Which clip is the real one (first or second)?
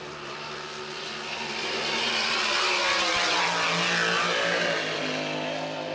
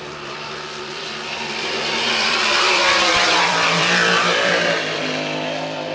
first